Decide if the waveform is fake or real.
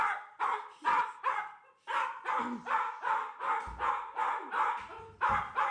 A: real